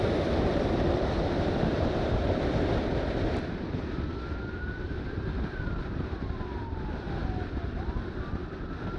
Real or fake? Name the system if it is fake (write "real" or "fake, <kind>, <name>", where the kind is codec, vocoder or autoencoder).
fake, vocoder, BigVGAN v2